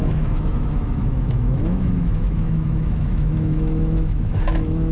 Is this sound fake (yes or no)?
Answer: yes